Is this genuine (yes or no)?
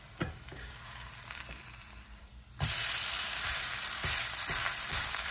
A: no